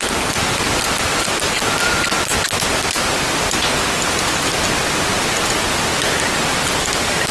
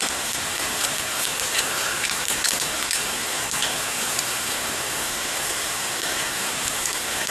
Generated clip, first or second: second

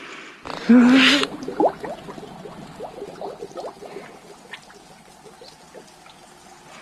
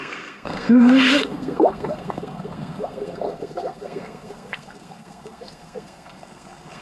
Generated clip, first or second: second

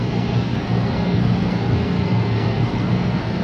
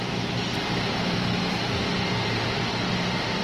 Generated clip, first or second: first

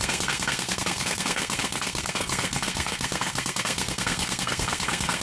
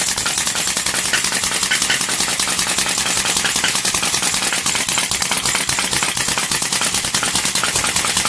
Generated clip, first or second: first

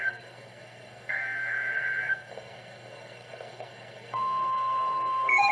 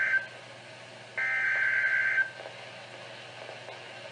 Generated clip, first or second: first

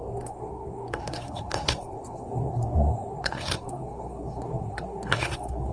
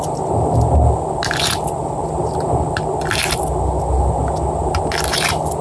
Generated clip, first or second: first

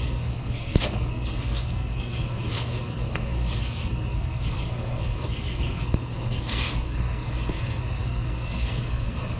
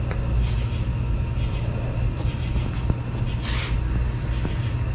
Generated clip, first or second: first